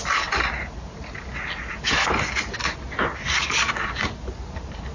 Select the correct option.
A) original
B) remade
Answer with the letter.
A